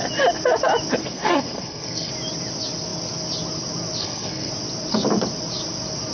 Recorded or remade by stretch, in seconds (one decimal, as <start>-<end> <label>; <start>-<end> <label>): 0.0-1.0 recorded; 1.0-2.1 remade; 2.1-4.0 recorded; 4.0-4.5 remade; 4.5-6.1 recorded